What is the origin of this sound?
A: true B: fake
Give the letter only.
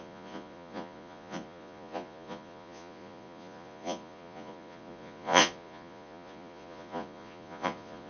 B